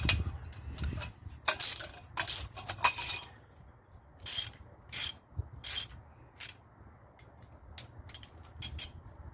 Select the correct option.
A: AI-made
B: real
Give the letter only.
B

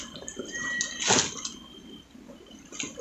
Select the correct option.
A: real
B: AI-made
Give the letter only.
A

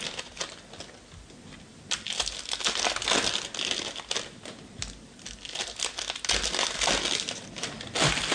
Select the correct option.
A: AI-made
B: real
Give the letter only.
B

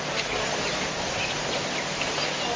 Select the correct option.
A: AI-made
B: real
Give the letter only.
B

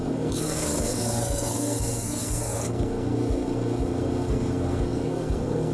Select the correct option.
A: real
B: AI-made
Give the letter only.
B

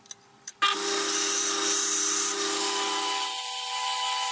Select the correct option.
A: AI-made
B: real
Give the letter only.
B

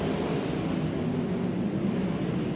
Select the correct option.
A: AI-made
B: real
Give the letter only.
B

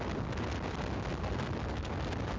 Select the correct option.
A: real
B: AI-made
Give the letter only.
A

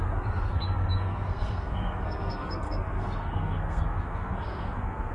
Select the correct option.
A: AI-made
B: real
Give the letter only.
A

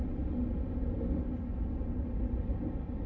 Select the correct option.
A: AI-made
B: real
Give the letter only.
B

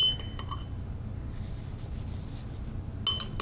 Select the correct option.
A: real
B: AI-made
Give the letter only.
A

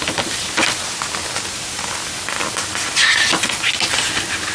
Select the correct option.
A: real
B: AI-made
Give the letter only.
A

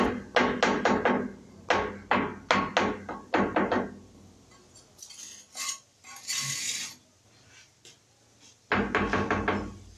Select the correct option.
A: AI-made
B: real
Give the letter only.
B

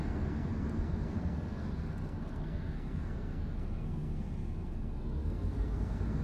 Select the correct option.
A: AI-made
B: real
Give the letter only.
A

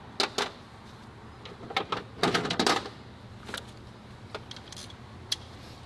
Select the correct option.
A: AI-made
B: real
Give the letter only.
B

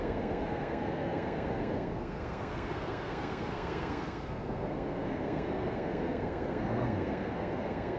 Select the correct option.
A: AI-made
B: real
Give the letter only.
A